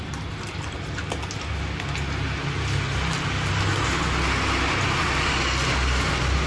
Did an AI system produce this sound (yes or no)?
no